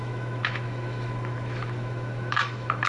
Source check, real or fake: fake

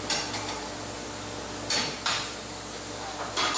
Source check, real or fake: real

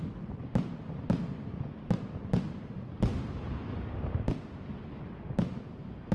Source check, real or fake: real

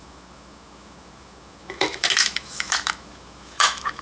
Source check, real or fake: fake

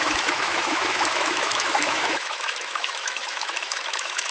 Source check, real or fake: fake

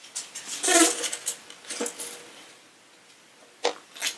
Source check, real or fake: real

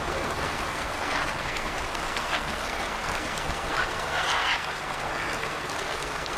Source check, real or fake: fake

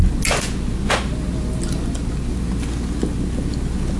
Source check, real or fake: real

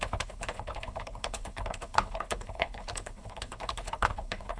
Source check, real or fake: fake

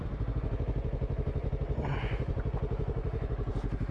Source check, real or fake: fake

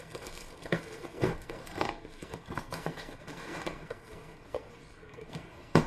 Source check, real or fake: fake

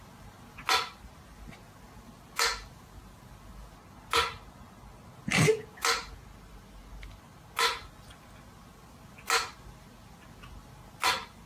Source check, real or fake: real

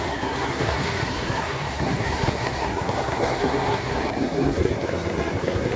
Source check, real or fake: fake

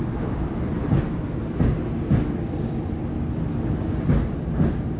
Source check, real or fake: real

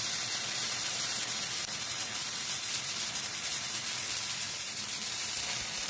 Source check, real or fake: fake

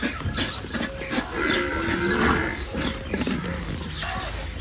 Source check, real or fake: real